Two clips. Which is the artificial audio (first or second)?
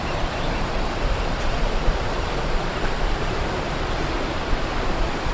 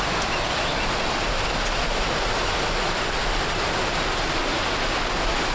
first